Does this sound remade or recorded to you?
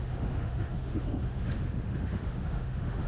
remade